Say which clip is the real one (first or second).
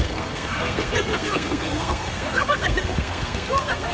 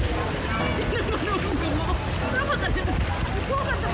second